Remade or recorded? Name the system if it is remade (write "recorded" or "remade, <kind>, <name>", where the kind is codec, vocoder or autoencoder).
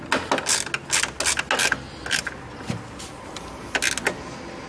recorded